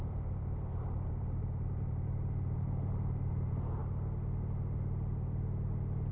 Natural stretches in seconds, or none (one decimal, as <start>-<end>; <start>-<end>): 3.8-6.1